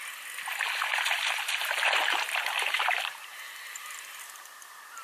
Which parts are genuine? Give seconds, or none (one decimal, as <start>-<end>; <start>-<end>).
0.0-1.6; 4.5-5.0